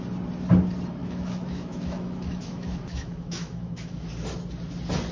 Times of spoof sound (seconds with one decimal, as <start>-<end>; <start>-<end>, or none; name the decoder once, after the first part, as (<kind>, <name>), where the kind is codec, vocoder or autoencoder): 1.0-4.1 (autoencoder, DAC-VAE)